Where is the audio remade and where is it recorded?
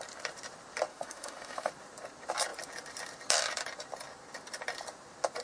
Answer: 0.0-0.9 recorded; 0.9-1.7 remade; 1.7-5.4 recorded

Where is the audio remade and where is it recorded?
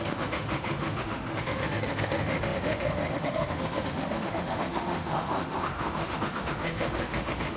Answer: 0.0-7.6 remade